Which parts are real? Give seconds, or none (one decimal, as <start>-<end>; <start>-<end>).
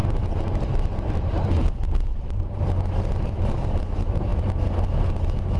1.5-2.1; 2.6-5.6